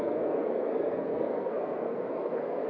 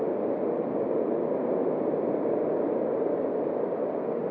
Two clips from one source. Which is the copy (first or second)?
first